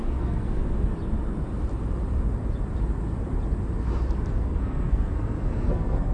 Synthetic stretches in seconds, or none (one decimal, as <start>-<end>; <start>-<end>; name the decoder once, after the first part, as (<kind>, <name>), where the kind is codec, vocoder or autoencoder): 0.0-0.6 (codec, SNAC); 4.3-6.1